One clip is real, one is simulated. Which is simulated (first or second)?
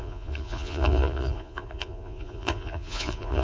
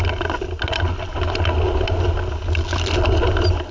first